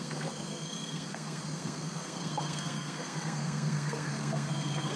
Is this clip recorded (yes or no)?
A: no